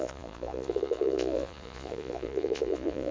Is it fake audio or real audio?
fake